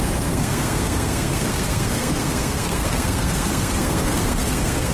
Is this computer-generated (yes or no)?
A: yes